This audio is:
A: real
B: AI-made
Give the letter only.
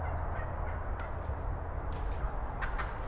A